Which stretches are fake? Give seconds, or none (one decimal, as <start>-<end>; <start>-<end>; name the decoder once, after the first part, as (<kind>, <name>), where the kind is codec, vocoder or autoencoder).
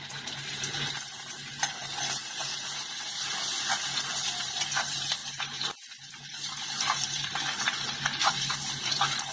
none